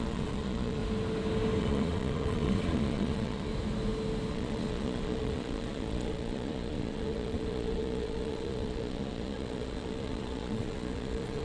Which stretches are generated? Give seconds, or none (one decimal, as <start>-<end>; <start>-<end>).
0.0-0.8; 1.6-3.5; 4.3-11.4